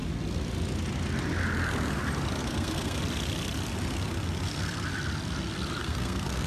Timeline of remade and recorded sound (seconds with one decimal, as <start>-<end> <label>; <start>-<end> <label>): 0.0-2.4 recorded; 2.4-3.0 remade; 3.0-5.8 recorded; 5.8-6.5 remade